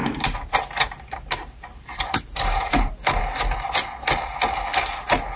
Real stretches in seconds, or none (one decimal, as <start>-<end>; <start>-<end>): 3.2-5.4